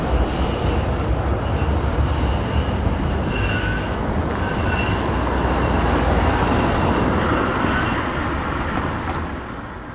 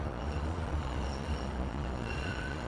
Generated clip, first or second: second